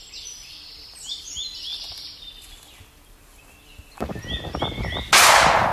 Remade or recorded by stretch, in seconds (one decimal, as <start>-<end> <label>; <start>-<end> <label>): 0.0-5.7 recorded